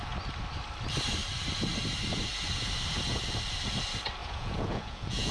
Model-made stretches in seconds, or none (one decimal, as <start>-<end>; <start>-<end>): 4.2-5.3

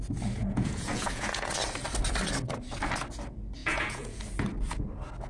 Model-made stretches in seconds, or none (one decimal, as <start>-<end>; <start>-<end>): 0.4-1.5; 3.6-4.2

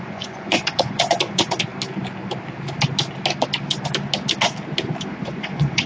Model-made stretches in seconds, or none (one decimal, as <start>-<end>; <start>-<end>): 0.0-1.7; 5.2-5.9

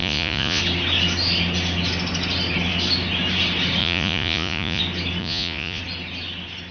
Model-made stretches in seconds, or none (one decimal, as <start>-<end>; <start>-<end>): 0.0-0.6; 3.8-4.8; 5.2-5.8

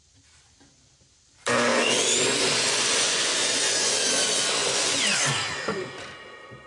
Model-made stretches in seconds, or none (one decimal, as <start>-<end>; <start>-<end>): 1.7-4.1; 4.6-5.3

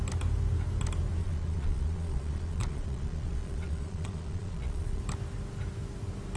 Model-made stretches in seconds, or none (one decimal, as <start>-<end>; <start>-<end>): 1.2-5.0